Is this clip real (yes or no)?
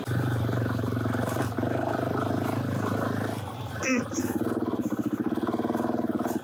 yes